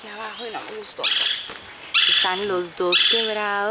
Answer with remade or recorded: recorded